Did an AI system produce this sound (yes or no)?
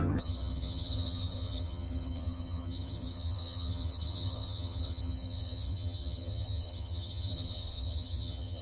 yes